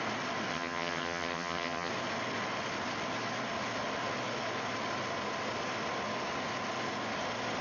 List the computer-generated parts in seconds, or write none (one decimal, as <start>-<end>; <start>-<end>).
0.5-1.9